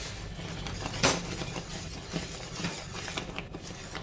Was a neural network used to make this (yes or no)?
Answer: no